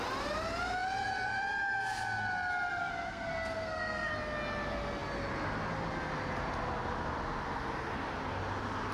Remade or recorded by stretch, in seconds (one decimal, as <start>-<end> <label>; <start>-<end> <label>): 0.0-2.8 recorded; 2.8-4.1 remade; 4.1-8.9 recorded